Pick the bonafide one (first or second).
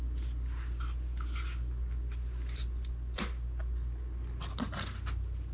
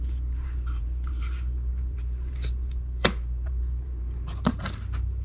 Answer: first